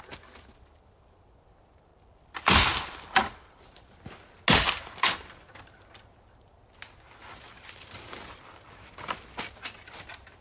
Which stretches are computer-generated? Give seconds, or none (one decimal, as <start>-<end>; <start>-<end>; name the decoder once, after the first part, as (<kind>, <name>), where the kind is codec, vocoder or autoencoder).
1.9-4.4 (vocoder, BigVGAN v2)